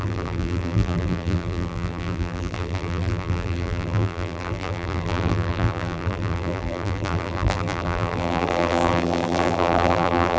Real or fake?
fake